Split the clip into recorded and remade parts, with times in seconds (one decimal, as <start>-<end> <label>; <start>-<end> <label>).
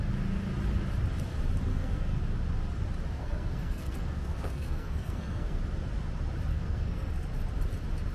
0.0-1.7 recorded; 1.7-2.2 remade; 2.2-3.1 recorded; 3.1-5.6 remade; 5.6-6.5 recorded; 6.5-7.1 remade; 7.1-8.1 recorded